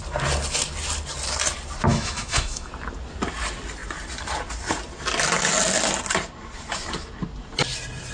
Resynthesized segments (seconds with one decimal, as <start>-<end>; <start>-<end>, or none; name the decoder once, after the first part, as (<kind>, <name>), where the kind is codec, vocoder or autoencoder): 1.9-2.7 (autoencoder, DAC-VAE)